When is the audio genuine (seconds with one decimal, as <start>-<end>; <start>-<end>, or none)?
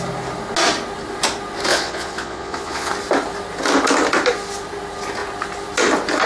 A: 0.0-1.7; 2.9-6.3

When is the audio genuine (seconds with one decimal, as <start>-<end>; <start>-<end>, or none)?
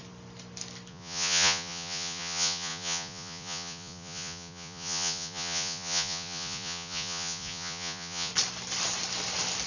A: 0.0-0.9; 8.3-9.7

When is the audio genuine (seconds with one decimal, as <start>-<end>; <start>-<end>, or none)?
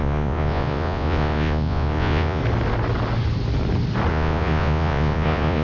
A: 2.4-4.1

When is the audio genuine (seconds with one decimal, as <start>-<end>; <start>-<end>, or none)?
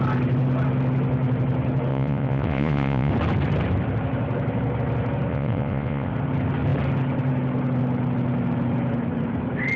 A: 0.0-1.9; 3.1-5.3; 6.1-9.8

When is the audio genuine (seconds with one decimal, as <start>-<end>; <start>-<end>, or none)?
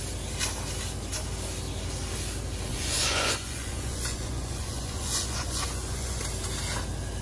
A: 0.0-2.7; 6.2-7.2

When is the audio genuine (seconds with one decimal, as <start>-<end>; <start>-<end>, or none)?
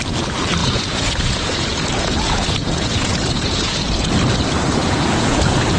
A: 0.0-0.6; 4.1-4.8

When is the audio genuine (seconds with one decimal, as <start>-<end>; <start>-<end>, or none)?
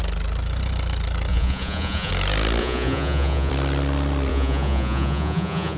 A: 0.0-1.3; 2.1-2.6; 3.5-4.3